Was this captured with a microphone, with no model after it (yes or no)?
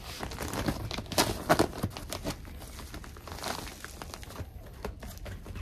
yes